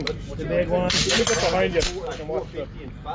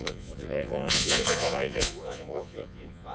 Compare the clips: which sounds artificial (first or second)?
second